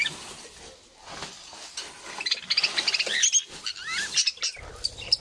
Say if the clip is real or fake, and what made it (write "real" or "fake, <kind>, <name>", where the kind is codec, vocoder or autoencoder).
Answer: real